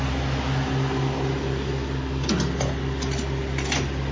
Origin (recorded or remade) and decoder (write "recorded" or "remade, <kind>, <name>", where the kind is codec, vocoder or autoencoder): recorded